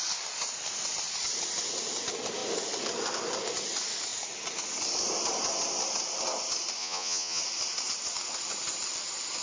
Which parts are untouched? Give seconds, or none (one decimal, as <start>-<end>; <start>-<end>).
0.0-6.8; 7.4-9.4